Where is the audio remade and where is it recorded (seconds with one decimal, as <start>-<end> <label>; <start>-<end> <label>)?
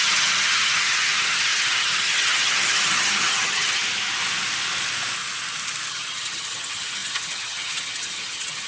0.0-3.8 remade; 3.8-5.9 recorded; 5.9-8.7 remade